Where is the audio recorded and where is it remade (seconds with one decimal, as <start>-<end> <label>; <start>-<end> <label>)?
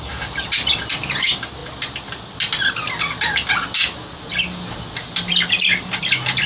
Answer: 0.0-6.5 recorded